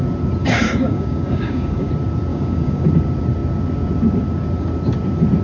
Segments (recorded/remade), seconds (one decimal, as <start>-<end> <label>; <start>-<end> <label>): 0.0-0.4 recorded; 0.4-1.9 remade; 1.9-2.3 recorded; 2.3-2.9 remade; 2.9-5.4 recorded